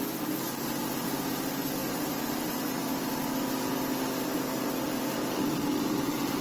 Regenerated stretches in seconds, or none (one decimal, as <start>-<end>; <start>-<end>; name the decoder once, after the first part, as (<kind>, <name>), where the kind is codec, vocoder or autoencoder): none